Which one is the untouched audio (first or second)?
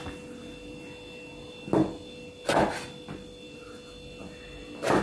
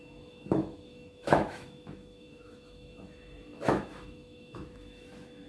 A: first